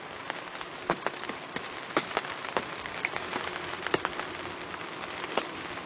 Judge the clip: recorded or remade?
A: recorded